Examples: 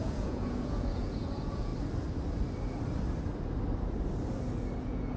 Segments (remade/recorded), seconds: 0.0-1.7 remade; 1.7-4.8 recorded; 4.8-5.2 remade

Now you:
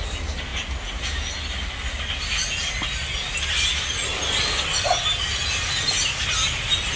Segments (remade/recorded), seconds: 0.0-7.0 recorded